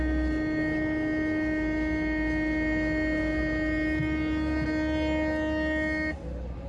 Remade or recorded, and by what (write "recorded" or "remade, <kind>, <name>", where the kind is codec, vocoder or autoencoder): recorded